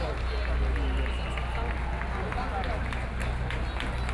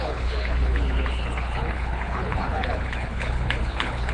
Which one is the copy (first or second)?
second